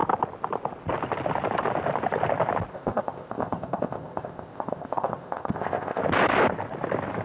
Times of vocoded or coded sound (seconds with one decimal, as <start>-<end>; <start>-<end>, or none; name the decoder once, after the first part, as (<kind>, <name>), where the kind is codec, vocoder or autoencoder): 2.7-6.0 (codec, ZipCodec)